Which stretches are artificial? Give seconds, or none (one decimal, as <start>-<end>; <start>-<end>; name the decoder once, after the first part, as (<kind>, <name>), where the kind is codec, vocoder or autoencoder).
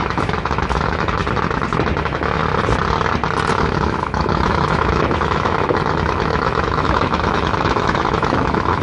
0.0-1.2 (autoencoder, DAC-VAE); 2.0-2.4; 3.5-8.8